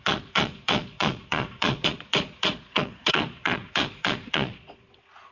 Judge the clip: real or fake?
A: fake